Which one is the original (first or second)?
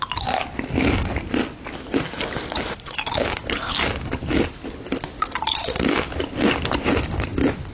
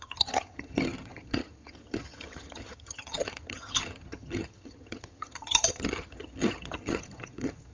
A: first